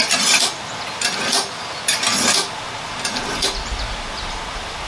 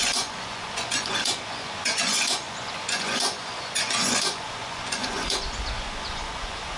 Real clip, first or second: first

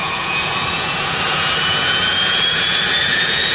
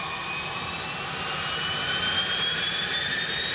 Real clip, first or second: second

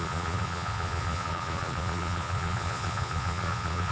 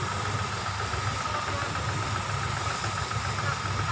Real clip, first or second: second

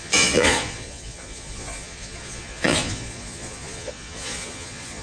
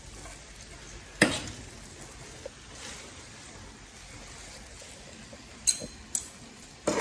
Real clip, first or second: second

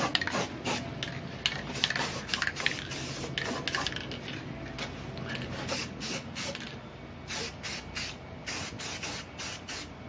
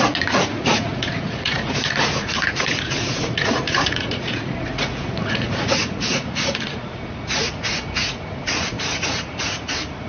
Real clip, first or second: first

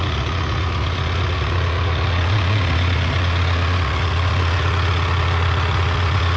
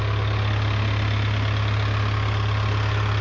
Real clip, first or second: second